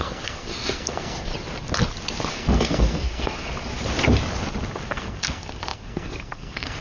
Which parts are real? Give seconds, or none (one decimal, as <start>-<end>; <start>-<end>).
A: 1.3-2.3; 3.5-4.9